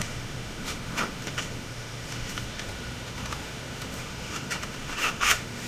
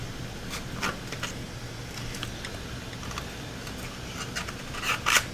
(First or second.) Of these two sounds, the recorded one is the second